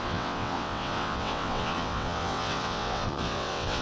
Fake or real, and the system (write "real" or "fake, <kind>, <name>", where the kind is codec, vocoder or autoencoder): fake, vocoder, WaveNeXt